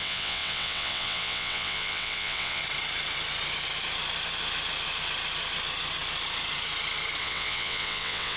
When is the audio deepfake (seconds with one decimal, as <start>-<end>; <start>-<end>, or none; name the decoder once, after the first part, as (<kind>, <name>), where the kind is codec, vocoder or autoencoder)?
0.0-2.6 (vocoder, WaveNeXt); 7.2-8.4